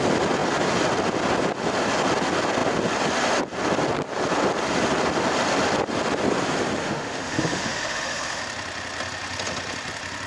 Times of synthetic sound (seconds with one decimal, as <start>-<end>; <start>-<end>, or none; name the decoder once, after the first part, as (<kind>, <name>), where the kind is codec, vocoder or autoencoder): 6.8-8.4 (autoencoder, DAC-VAE)